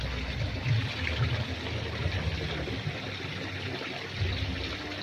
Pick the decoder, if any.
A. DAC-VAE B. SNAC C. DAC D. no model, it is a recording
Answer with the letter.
D